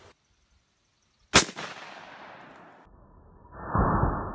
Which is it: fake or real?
real